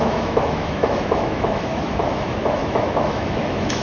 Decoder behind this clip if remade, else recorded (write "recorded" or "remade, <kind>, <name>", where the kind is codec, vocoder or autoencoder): remade, autoencoder, DAC-VAE